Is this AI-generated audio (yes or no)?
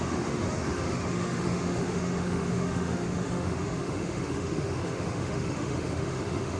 yes